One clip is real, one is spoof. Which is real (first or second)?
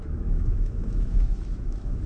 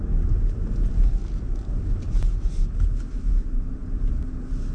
second